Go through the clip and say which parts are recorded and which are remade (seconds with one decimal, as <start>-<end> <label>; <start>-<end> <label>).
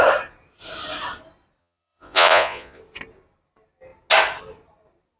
0.0-1.6 recorded; 1.6-2.8 remade; 2.8-5.2 recorded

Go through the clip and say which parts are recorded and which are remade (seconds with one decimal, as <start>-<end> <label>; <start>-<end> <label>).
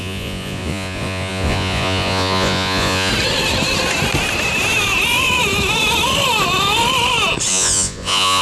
0.0-3.1 remade; 3.1-7.5 recorded; 7.5-8.4 remade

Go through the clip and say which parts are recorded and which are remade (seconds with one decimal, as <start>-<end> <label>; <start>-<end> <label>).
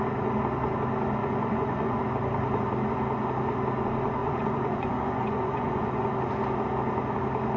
0.0-1.2 recorded; 1.2-2.0 remade; 2.0-4.2 recorded; 4.2-6.1 remade; 6.1-7.6 recorded